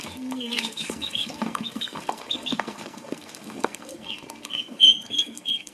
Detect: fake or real fake